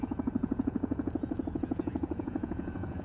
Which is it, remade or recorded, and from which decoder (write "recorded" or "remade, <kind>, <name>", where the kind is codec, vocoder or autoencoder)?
remade, vocoder, Vocos